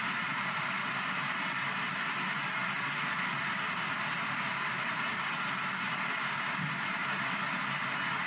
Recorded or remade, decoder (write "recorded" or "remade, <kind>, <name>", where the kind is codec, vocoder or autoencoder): remade, vocoder, BigVGAN v2